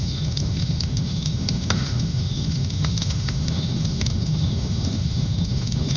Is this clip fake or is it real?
fake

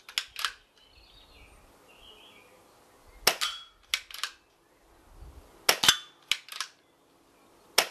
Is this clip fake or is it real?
real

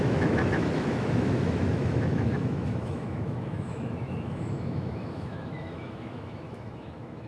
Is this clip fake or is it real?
fake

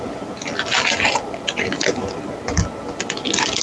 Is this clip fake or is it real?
real